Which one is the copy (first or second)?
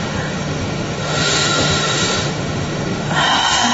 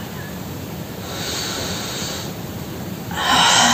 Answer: first